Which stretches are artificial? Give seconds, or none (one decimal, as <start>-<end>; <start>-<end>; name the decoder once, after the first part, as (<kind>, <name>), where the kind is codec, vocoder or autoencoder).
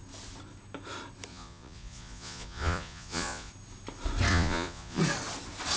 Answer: 1.3-3.5 (vocoder, Vocos); 4.3-5.0